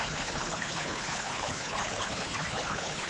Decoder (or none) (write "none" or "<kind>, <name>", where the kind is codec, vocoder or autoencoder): codec, HILCodec